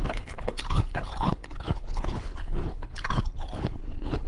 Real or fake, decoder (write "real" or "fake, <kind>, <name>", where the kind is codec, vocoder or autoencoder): fake, codec, HILCodec